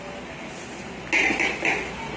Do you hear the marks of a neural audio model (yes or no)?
no